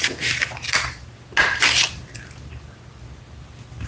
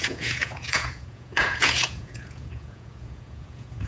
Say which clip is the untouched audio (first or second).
first